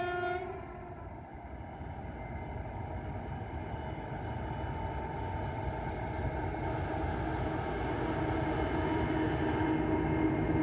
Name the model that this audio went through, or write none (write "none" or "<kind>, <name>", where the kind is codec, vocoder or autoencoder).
none